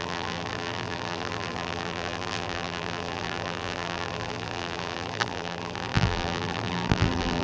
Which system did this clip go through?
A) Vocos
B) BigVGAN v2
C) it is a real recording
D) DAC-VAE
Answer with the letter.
B